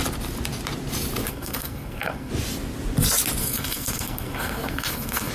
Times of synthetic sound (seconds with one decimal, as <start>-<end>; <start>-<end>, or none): 1.3-2.3; 3.4-5.3